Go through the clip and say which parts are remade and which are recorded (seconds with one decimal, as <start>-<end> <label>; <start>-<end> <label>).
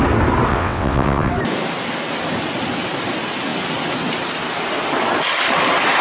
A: 0.0-0.5 recorded; 0.5-1.3 remade; 1.3-6.0 recorded